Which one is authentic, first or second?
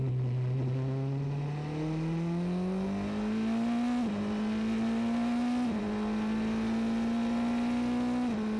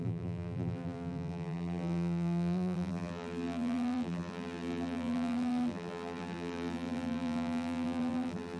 first